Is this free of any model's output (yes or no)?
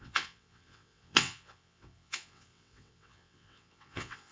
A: no